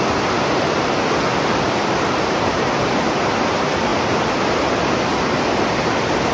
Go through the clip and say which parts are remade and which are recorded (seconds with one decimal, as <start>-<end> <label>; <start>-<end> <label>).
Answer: 0.0-6.3 recorded